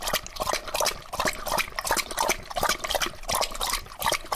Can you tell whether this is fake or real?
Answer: real